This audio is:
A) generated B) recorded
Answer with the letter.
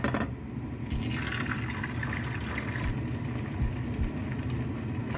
B